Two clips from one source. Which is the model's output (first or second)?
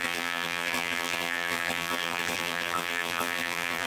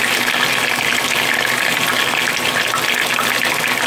first